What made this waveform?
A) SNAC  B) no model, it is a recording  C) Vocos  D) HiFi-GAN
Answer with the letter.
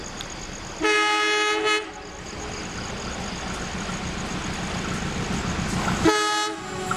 B